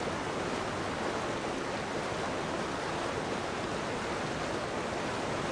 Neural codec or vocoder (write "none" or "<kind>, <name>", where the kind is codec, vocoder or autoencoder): none